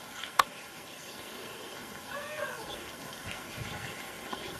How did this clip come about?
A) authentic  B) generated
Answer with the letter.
B